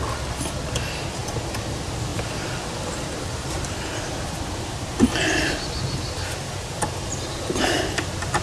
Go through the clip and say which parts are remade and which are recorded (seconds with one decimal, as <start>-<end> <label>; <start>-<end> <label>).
0.0-8.4 recorded